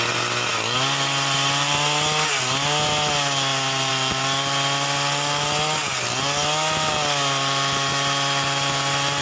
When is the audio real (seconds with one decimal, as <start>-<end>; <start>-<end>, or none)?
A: 0.0-9.2